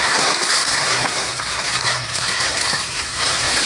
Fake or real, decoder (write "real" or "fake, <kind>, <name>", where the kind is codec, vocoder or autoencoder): fake, codec, SNAC